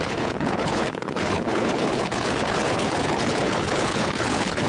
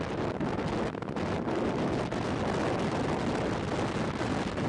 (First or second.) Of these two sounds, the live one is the second